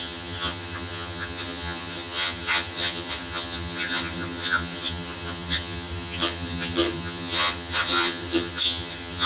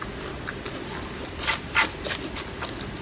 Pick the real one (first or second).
second